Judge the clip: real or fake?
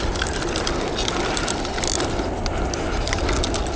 real